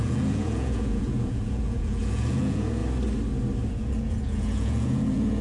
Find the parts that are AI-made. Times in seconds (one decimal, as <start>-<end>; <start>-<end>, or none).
0.0-2.8; 3.7-5.4